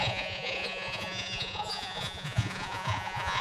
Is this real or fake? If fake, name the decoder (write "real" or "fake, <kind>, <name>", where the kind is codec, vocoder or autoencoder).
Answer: fake, vocoder, Vocos